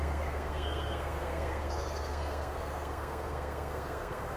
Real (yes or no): no